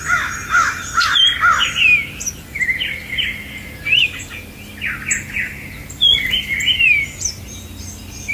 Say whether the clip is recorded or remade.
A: recorded